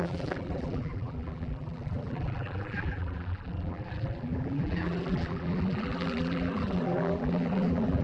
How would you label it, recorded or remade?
remade